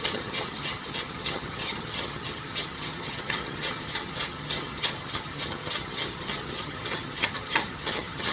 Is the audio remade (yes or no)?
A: yes